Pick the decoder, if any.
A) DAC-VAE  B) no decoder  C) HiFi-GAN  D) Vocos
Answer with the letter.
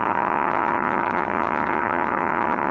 C